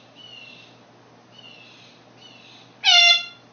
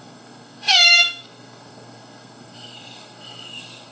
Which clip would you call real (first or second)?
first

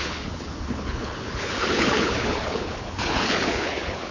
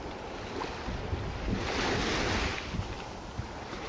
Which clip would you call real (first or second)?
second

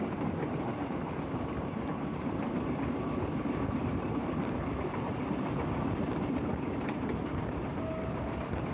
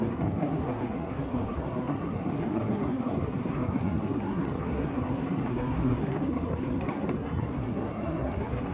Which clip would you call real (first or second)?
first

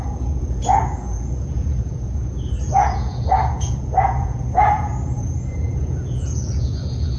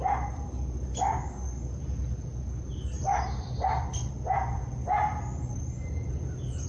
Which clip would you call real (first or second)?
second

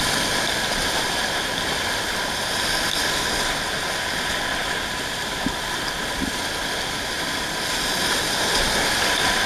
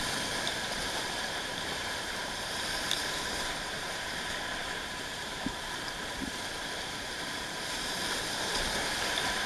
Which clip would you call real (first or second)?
first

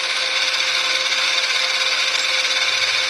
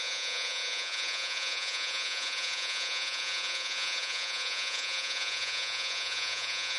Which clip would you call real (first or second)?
first